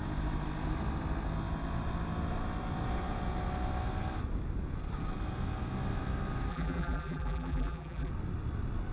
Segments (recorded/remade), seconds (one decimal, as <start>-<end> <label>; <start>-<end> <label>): 0.0-6.5 recorded; 6.5-8.1 remade; 8.1-8.9 recorded